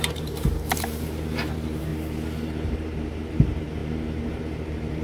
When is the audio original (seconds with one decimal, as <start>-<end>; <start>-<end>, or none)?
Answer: 1.9-2.7; 3.8-4.3